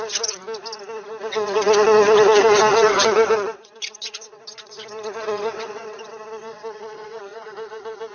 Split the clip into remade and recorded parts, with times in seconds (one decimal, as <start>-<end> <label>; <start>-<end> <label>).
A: 0.0-0.4 remade; 0.4-1.2 recorded; 1.2-8.1 remade

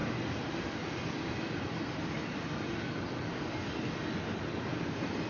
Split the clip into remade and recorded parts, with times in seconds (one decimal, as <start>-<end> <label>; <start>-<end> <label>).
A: 0.0-5.3 recorded

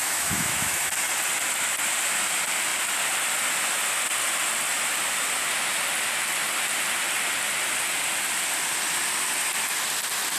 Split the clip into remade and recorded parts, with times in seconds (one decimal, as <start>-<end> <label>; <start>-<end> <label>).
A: 0.0-0.9 remade; 0.9-10.4 recorded

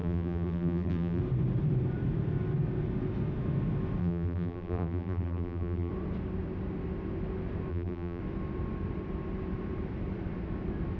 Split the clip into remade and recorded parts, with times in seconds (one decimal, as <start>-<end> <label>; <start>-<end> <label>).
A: 0.0-1.2 remade; 1.2-4.0 recorded; 4.0-5.9 remade; 5.9-7.7 recorded; 7.7-8.2 remade; 8.2-11.0 recorded